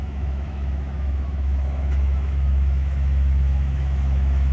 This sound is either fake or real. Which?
fake